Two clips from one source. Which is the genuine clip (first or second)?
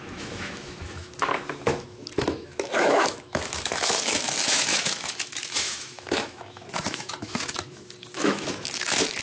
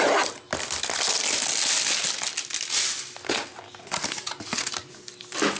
second